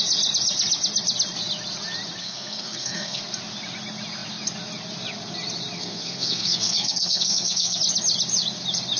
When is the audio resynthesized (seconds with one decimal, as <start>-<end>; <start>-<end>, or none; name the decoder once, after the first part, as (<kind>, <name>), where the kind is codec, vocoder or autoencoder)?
2.2-3.2 (codec, SNAC); 5.8-7.8